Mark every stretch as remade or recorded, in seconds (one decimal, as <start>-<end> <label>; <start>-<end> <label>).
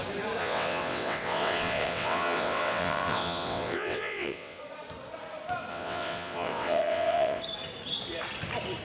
0.0-0.4 recorded; 0.4-4.6 remade; 4.6-5.7 recorded; 5.7-7.4 remade; 7.4-8.8 recorded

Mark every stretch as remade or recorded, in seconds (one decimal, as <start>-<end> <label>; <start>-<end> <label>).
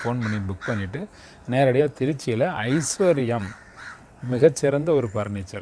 0.0-1.8 recorded; 1.8-5.6 remade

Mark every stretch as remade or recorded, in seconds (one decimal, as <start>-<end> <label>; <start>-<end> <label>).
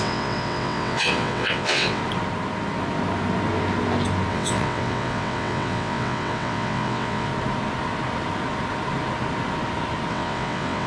0.0-2.0 remade; 2.0-4.3 recorded; 4.3-7.3 remade; 7.3-10.1 recorded; 10.1-10.9 remade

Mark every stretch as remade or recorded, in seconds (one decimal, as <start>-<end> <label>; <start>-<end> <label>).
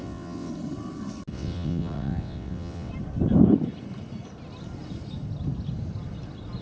0.0-0.5 remade; 0.5-1.3 recorded; 1.3-2.9 remade; 2.9-6.6 recorded